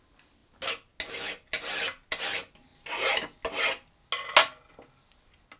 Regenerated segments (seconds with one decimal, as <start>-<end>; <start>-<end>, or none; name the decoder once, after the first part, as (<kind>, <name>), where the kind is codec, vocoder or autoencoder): none